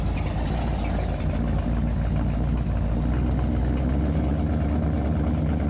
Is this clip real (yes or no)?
yes